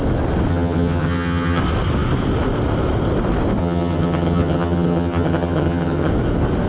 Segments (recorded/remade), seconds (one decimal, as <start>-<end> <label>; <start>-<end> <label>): 0.0-0.5 recorded; 0.5-1.6 remade; 1.6-3.6 recorded; 3.6-6.1 remade; 6.1-6.7 recorded